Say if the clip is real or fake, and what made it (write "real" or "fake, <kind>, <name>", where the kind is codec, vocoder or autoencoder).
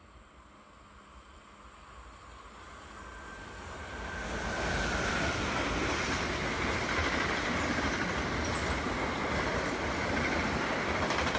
real